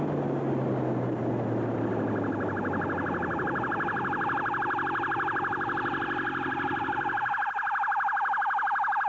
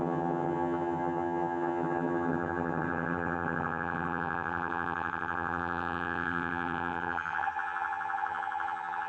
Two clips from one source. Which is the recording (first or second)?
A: first